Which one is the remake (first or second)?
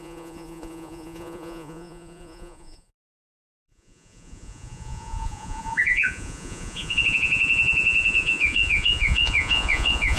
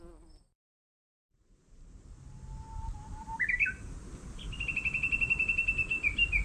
first